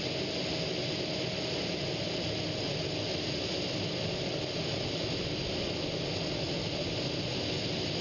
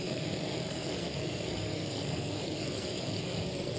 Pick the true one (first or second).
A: first